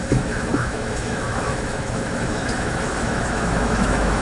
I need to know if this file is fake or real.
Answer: fake